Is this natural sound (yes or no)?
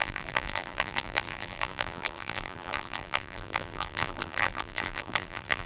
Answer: no